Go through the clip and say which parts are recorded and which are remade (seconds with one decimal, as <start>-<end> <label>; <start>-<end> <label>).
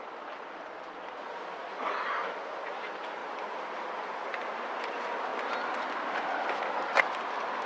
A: 0.0-1.6 recorded; 1.6-2.3 remade; 2.3-5.3 recorded; 5.3-7.0 remade; 7.0-7.7 recorded